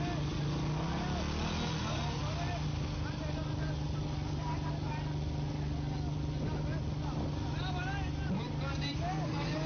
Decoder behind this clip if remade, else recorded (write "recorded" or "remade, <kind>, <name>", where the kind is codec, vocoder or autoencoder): recorded